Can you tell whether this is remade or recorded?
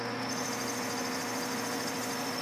recorded